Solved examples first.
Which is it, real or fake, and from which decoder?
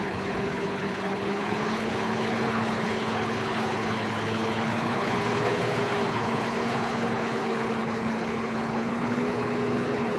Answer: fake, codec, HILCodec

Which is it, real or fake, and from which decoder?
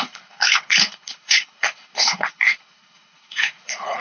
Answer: fake, codec, HILCodec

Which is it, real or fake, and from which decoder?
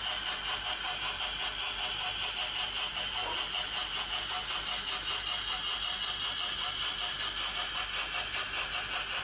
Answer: real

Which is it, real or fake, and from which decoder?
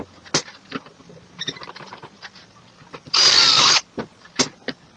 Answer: real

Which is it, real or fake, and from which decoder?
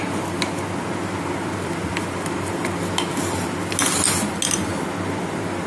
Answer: real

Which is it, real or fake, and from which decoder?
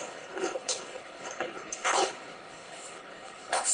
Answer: fake, codec, HILCodec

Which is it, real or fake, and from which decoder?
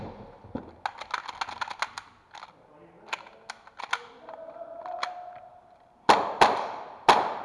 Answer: real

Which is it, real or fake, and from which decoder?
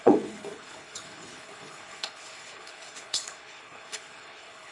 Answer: fake, codec, HILCodec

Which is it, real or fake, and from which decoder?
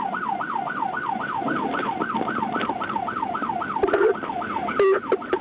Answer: real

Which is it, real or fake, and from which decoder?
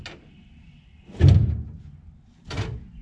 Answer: real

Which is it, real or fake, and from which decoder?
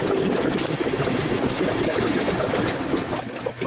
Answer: real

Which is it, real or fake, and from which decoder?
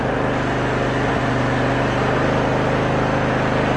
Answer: real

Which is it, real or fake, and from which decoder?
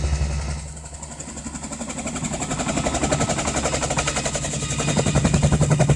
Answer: real